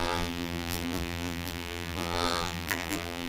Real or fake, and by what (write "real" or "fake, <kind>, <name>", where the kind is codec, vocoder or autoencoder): fake, vocoder, BigVGAN v2